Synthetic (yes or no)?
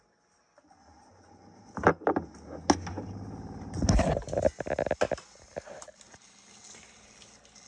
no